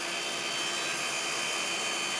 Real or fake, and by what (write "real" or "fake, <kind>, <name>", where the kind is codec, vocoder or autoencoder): real